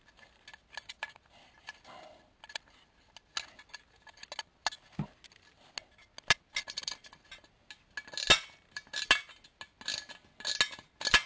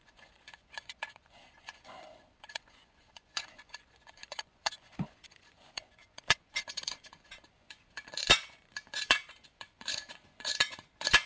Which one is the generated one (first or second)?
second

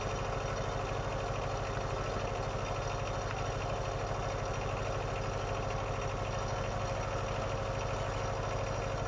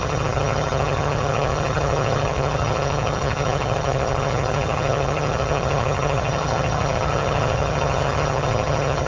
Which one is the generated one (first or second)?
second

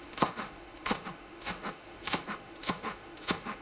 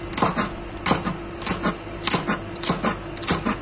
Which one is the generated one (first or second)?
first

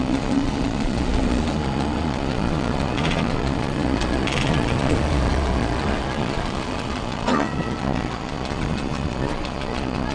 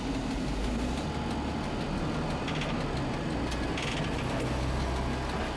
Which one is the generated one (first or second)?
first